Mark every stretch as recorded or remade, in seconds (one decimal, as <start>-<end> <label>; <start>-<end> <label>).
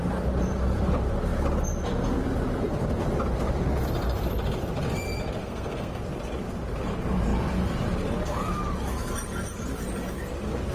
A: 0.0-5.4 recorded; 5.4-6.0 remade; 6.0-10.7 recorded